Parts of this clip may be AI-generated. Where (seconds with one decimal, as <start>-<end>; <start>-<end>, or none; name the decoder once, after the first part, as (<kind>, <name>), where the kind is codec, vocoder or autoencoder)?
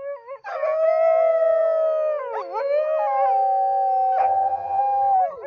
4.2-4.8 (vocoder, HiFi-GAN)